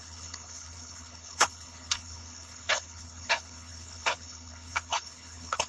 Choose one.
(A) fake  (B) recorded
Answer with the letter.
A